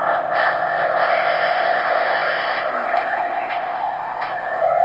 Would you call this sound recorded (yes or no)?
no